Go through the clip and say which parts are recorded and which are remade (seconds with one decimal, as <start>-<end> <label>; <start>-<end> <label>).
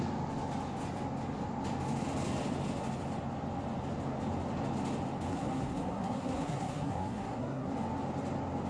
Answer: 0.0-5.3 recorded; 5.3-7.7 remade; 7.7-8.7 recorded